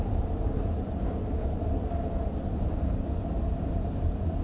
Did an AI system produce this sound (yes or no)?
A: no